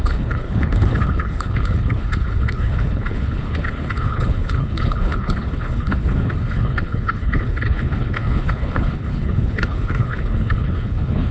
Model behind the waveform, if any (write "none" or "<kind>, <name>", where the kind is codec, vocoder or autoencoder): codec, HILCodec